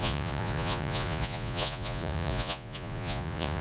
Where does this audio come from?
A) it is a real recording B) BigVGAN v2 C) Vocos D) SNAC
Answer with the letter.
C